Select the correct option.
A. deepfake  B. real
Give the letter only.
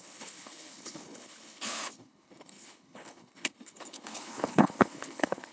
A